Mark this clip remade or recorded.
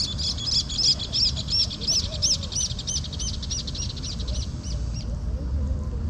recorded